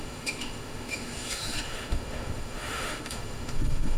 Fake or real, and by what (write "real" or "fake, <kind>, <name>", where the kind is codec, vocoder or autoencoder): fake, autoencoder, DAC-VAE